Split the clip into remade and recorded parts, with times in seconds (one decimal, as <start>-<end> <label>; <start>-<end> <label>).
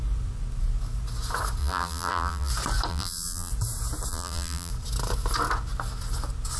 0.0-1.6 recorded; 1.6-2.5 remade; 2.5-2.9 recorded; 2.9-3.5 remade; 3.5-4.1 recorded; 4.1-4.7 remade; 4.7-6.6 recorded